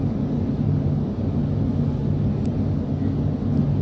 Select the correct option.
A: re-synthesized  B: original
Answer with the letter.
B